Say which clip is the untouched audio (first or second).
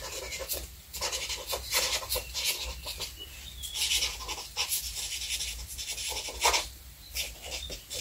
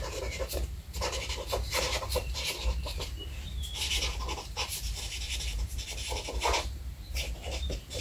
first